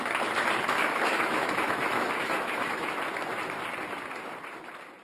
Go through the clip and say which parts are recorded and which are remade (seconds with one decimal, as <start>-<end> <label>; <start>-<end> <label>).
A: 0.0-0.8 recorded; 0.8-2.9 remade; 2.9-5.0 recorded